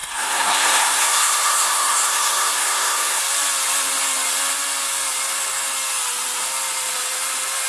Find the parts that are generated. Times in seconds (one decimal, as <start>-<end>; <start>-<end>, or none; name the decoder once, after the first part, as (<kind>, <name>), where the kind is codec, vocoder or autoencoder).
0.0-3.2 (codec, SNAC)